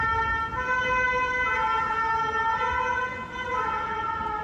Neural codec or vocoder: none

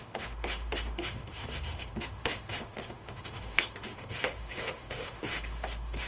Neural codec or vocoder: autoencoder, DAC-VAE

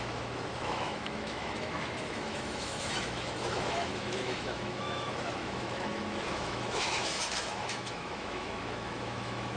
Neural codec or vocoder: autoencoder, DAC-VAE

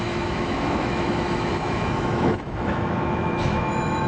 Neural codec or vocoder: autoencoder, DAC-VAE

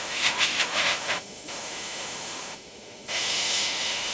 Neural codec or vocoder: autoencoder, DAC-VAE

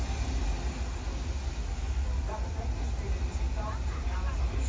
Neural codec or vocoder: none